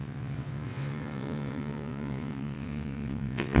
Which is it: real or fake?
fake